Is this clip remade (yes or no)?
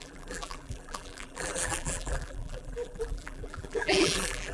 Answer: yes